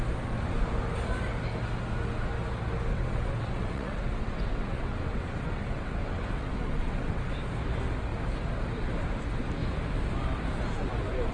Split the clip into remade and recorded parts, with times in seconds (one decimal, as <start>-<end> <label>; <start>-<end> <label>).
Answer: 0.0-2.9 recorded; 2.9-7.3 remade; 7.3-11.3 recorded